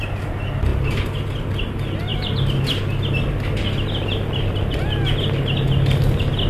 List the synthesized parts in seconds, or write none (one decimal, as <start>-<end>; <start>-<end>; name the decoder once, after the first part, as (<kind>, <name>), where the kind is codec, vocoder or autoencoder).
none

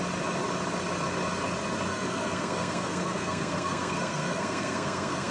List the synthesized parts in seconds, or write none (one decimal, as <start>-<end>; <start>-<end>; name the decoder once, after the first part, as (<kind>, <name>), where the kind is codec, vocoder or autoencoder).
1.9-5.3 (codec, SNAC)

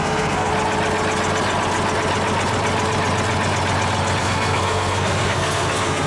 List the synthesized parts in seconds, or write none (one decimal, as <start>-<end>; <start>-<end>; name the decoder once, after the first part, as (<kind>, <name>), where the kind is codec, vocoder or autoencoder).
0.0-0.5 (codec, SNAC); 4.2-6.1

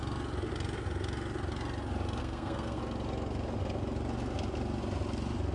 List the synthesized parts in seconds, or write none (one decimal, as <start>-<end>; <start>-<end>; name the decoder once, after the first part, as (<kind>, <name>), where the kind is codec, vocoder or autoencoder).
2.2-2.8 (codec, SNAC)